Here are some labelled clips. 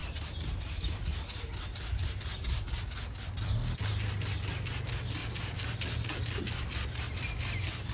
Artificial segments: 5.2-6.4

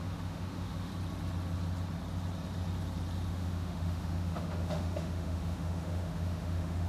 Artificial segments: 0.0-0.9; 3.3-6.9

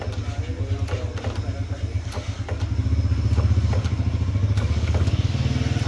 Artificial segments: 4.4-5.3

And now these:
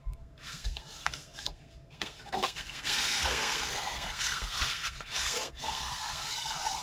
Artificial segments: 0.0-6.8

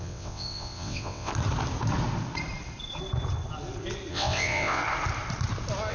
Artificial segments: 0.0-1.3; 4.1-4.8

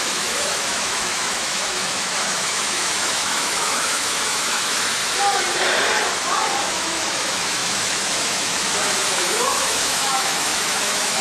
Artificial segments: 0.0-5.0; 6.6-11.2